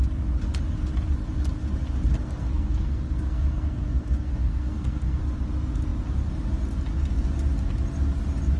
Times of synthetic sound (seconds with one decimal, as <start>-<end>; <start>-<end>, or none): 2.2-5.2